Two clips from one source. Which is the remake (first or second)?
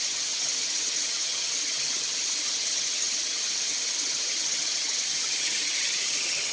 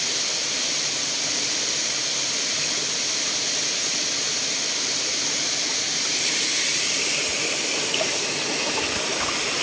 first